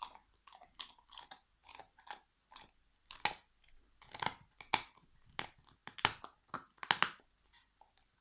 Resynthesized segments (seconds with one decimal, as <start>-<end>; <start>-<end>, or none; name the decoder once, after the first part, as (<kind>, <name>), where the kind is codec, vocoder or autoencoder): none